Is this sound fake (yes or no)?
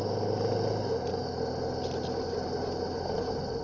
no